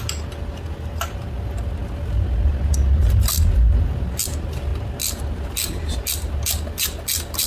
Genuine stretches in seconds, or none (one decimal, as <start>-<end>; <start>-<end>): 0.0-7.5